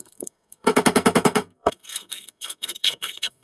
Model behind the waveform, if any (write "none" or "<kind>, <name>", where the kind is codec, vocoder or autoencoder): codec, SNAC